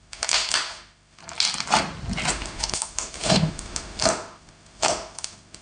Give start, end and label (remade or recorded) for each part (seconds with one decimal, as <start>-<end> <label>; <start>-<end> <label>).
0.0-1.2 remade; 1.2-2.3 recorded; 2.3-5.6 remade